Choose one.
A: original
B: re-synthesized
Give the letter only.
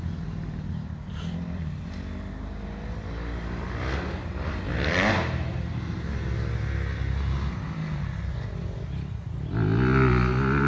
A